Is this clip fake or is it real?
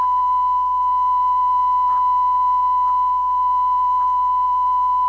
real